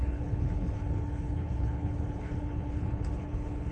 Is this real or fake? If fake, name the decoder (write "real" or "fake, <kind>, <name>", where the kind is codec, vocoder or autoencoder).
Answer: fake, codec, HILCodec